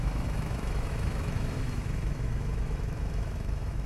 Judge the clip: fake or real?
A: fake